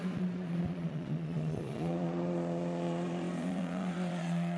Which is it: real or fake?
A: fake